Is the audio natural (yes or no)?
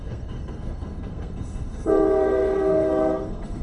no